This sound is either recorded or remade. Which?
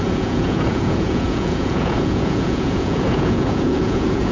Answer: remade